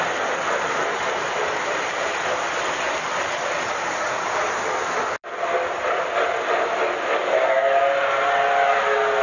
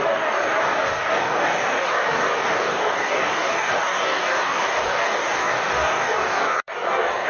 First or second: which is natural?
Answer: first